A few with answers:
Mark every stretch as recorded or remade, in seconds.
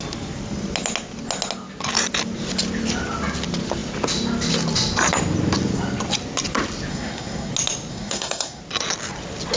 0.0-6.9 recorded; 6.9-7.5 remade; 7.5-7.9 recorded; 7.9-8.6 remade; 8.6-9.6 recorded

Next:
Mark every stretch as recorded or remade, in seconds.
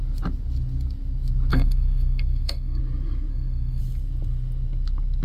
0.0-1.5 recorded; 1.5-2.8 remade; 2.8-3.3 recorded; 3.3-3.8 remade; 3.8-5.2 recorded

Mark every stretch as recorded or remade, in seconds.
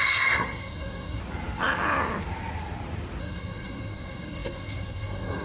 0.0-1.2 remade; 1.2-3.2 recorded; 3.2-5.4 remade